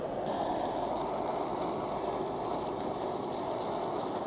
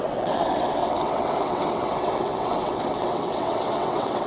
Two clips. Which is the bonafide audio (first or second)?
first